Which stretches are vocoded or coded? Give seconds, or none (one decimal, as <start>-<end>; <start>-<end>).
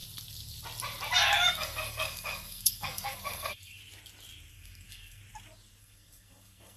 1.5-3.8; 4.5-5.2; 5.8-6.8